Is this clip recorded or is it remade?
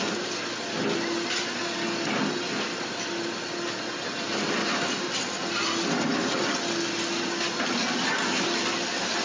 recorded